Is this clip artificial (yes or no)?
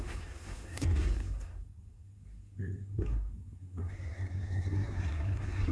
yes